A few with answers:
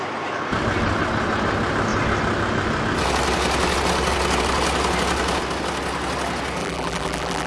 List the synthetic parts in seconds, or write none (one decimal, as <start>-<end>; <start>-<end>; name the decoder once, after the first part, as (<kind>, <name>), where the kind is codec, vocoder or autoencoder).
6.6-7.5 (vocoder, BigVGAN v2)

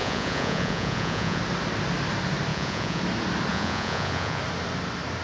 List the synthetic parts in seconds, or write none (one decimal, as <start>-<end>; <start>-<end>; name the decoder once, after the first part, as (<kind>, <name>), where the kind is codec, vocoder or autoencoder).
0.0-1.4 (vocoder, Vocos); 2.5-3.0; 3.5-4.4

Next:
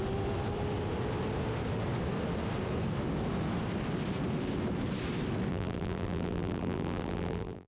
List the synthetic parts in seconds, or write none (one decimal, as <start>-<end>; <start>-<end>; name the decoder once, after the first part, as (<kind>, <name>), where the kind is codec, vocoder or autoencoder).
5.5-7.7 (vocoder, BigVGAN v2)